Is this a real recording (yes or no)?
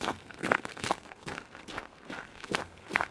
no